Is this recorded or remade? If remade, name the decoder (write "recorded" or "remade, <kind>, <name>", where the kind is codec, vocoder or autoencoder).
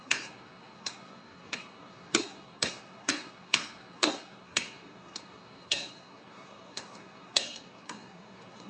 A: remade, codec, SNAC